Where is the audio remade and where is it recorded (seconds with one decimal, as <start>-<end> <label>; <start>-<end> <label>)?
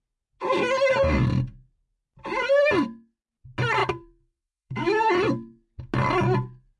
0.0-3.8 recorded; 3.8-5.1 remade; 5.1-6.8 recorded